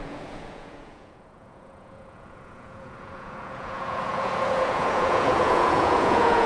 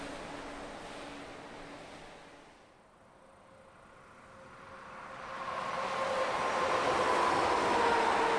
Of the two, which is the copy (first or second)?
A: first